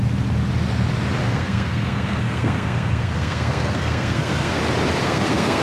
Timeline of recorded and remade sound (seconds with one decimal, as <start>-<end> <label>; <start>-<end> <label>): 0.0-1.2 recorded; 1.2-4.6 remade; 4.6-5.0 recorded; 5.0-5.6 remade